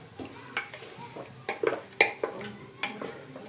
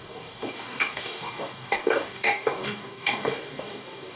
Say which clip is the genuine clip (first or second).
first